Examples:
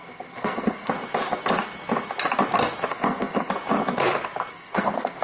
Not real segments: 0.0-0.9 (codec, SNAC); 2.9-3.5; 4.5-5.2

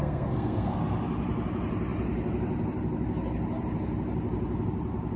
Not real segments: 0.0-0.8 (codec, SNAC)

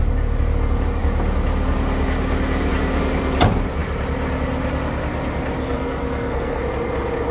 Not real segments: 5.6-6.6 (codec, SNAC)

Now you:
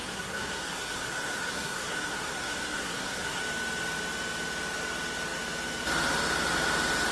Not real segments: 0.0-3.4 (codec, SNAC)